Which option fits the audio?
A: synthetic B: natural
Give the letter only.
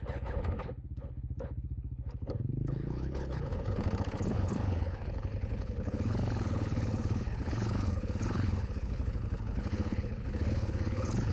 A